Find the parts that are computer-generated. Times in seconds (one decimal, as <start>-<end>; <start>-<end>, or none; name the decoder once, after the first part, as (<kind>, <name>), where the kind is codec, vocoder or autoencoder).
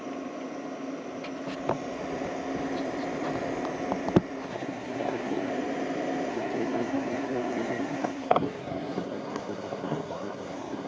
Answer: 4.5-5.5 (codec, SNAC); 6.3-10.9